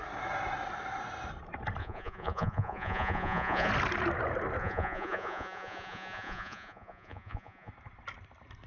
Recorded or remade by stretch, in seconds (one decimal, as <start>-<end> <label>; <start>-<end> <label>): 0.0-1.8 recorded; 1.8-3.7 remade; 3.7-4.6 recorded; 4.6-7.7 remade; 7.7-8.7 recorded